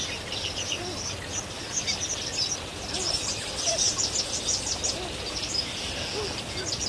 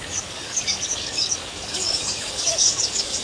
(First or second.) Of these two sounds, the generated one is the second